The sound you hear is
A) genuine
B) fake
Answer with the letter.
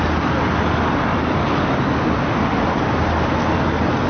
A